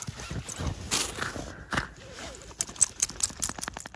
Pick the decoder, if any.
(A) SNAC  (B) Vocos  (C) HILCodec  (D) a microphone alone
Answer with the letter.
D